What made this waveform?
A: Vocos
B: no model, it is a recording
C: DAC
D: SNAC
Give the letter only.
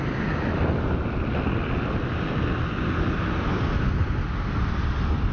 B